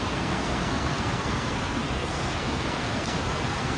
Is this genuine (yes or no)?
no